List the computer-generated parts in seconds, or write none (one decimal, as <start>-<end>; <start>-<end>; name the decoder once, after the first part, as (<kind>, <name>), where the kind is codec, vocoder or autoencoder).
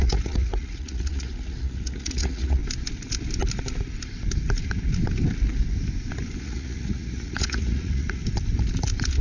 0.0-2.6 (vocoder, Vocos); 6.4-8.2